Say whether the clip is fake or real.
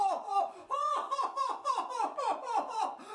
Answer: fake